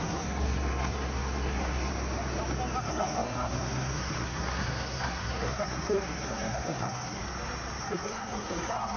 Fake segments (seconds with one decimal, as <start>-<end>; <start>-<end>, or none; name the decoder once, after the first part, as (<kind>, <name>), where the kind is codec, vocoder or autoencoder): 0.0-1.9 (codec, SNAC); 2.8-7.2; 7.8-9.0